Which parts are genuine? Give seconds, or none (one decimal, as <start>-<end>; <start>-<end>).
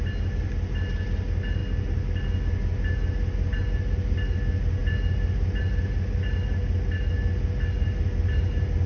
0.0-8.9